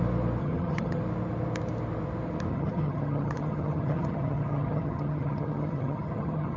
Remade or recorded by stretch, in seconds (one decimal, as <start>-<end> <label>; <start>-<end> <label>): 0.0-0.4 recorded; 0.4-1.0 remade; 1.0-2.5 recorded; 2.5-6.6 remade